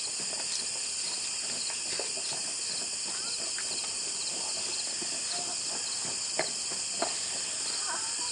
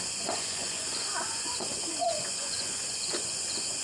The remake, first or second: second